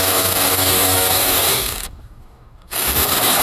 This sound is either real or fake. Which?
fake